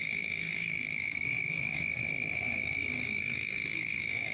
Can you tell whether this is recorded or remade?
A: remade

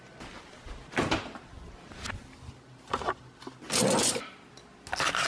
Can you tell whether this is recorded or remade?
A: recorded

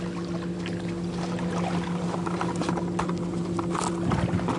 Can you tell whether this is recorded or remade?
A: recorded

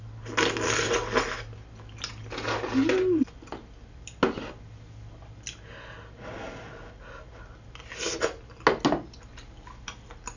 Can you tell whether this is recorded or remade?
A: recorded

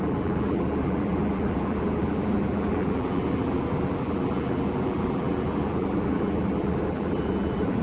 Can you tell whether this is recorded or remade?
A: remade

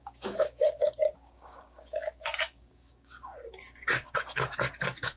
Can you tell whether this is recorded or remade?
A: remade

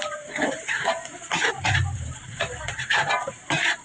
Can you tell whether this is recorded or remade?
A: remade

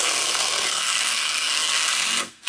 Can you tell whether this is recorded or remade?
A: remade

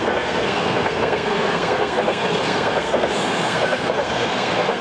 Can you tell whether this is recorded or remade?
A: remade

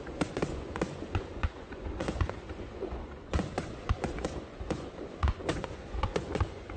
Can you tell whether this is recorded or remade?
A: remade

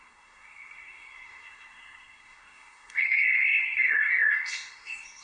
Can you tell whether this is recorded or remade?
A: remade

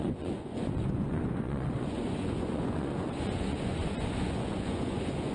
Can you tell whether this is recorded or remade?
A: remade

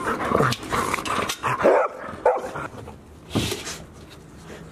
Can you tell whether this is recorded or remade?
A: recorded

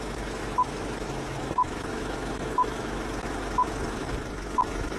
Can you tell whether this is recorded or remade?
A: remade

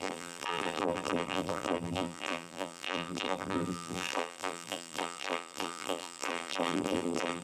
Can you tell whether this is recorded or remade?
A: remade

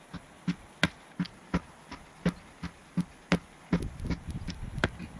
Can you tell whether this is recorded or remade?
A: recorded